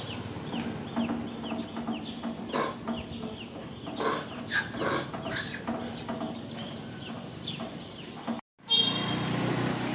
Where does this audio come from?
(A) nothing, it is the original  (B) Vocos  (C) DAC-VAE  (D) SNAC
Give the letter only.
A